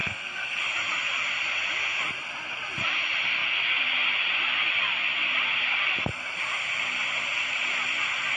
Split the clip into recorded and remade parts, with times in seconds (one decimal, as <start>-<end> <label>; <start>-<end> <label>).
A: 0.0-0.6 remade; 0.6-8.4 recorded